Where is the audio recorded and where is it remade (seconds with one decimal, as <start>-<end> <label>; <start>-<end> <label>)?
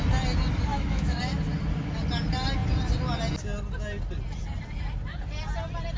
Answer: 0.0-0.7 recorded; 0.7-1.2 remade; 1.2-6.0 recorded